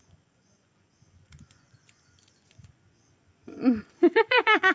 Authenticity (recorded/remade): remade